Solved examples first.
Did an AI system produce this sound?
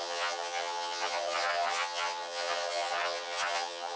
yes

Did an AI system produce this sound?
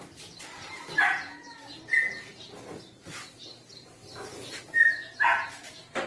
no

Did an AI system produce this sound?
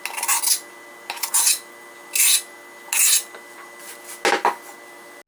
no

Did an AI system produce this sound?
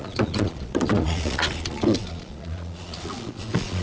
yes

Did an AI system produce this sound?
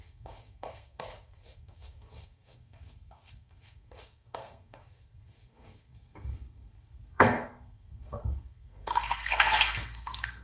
yes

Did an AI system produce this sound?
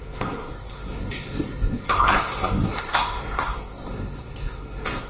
yes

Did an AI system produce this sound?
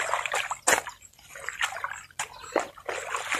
no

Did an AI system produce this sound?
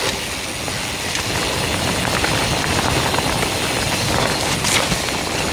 no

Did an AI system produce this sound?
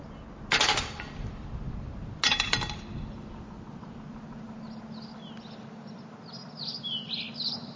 no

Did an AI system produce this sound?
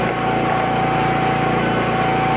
no